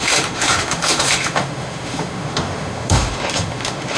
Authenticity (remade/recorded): remade